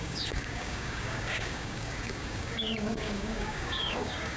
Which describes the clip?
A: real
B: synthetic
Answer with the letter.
B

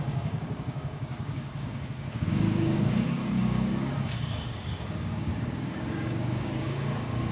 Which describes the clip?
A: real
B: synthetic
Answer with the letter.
B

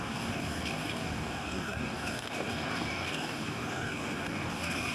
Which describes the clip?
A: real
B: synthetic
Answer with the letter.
B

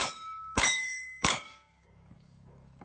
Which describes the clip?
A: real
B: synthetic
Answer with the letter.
B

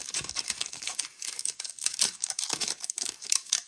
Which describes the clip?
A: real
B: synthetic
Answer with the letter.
B